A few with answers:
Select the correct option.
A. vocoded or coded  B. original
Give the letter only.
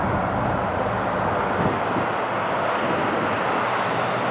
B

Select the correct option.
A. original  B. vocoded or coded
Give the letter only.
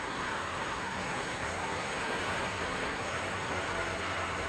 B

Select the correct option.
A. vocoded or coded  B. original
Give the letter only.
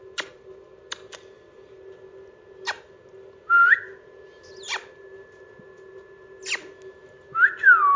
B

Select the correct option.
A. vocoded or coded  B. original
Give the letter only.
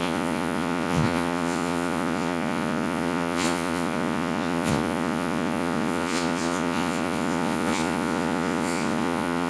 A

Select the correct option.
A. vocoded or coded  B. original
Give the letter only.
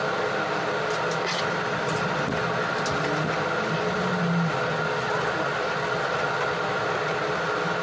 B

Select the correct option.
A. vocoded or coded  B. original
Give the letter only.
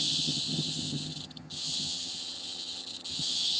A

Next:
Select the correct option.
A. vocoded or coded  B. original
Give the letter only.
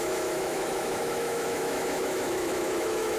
A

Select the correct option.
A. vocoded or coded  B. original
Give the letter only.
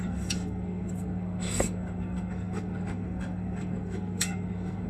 A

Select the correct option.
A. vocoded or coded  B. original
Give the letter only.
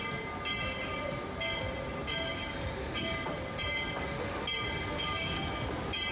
B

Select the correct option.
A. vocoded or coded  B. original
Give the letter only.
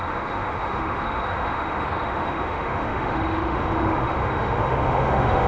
A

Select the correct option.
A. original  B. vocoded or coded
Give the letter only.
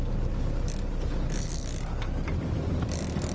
A